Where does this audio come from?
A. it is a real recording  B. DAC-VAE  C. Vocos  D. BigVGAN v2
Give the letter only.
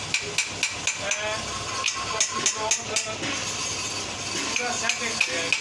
A